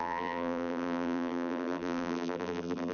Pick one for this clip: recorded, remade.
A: remade